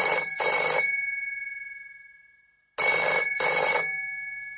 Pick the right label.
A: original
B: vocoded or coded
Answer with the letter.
A